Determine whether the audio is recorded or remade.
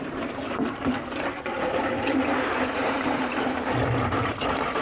remade